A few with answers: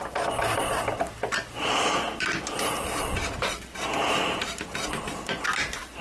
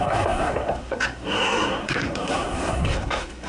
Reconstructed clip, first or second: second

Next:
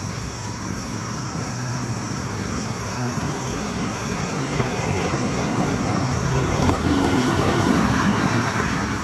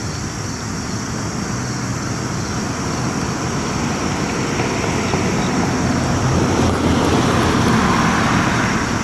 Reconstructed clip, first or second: first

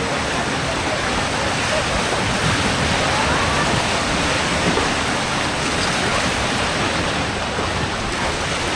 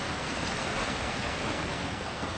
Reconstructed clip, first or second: second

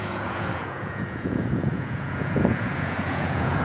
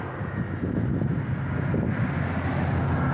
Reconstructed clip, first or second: first